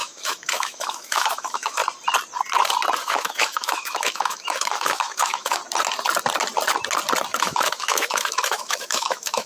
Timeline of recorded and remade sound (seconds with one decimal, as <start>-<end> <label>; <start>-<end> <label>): 0.0-1.8 remade; 1.8-3.0 recorded; 3.0-5.6 remade; 5.6-7.4 recorded; 7.4-9.5 remade